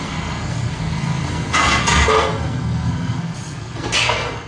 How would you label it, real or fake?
fake